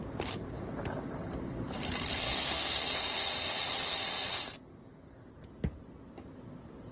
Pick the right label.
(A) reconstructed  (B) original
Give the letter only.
B